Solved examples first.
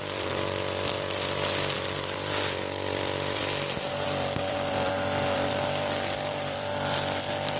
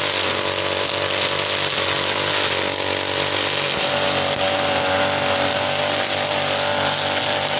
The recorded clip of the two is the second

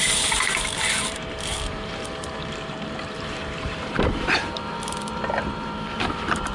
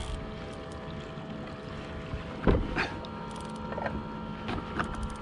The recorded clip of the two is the second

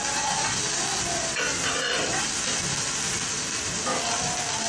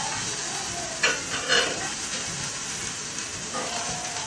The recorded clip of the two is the first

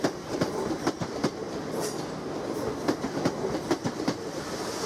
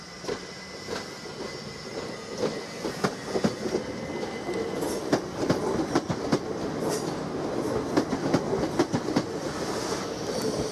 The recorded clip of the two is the second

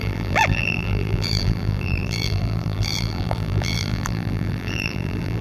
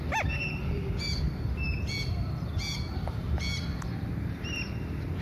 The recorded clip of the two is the second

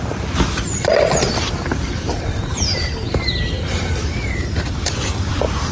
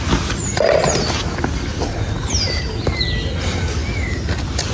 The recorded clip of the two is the second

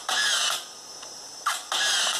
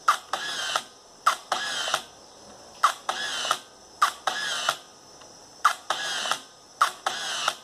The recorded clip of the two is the second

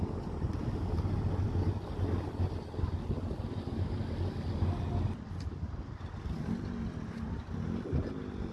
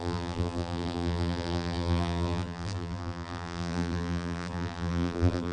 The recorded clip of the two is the first